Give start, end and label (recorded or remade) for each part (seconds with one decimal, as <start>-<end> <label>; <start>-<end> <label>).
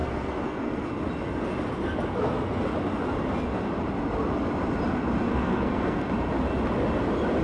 0.0-0.9 remade; 0.9-5.3 recorded; 5.3-6.1 remade; 6.1-7.4 recorded